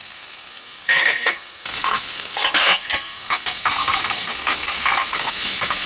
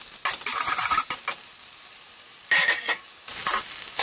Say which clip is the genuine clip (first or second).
second